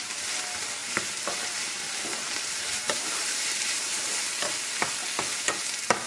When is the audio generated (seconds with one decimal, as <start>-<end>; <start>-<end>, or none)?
0.8-4.0